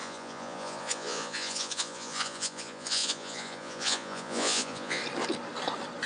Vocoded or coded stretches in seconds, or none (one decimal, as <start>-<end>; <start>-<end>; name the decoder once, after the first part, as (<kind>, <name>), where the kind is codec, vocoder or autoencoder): 0.0-5.0 (vocoder, Vocos)